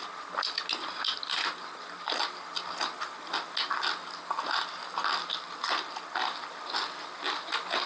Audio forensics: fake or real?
real